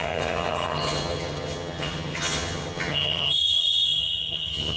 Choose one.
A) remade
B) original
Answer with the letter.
A